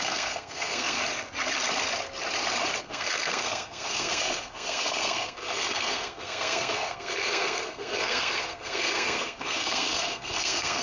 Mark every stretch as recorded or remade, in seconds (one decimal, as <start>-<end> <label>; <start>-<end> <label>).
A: 0.0-1.0 remade; 1.0-2.8 recorded; 2.8-10.8 remade